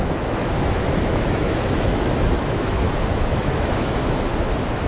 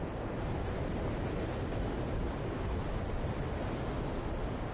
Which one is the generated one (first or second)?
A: first